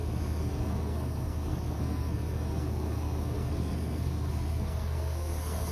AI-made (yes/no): yes